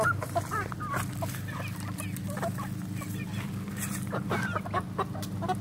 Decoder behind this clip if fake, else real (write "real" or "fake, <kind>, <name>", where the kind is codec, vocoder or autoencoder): real